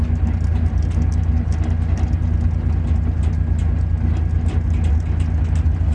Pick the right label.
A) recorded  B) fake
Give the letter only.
A